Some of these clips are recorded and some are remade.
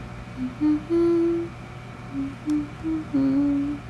recorded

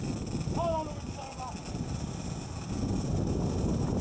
recorded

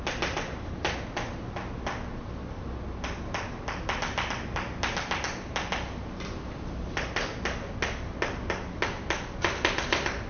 recorded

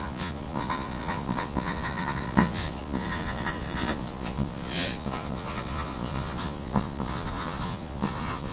remade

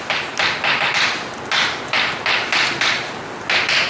recorded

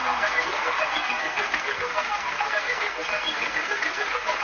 remade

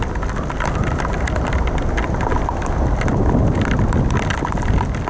recorded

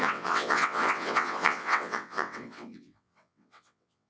remade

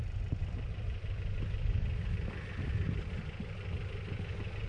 recorded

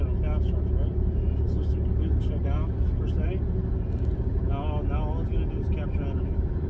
recorded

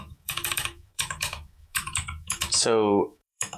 remade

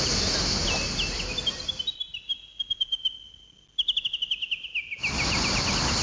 recorded